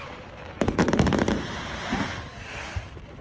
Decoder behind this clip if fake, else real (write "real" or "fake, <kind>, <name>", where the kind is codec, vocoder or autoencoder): fake, vocoder, BigVGAN v2